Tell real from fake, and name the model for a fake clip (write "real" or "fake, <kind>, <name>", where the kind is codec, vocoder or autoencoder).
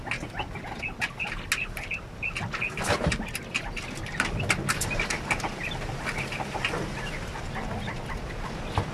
real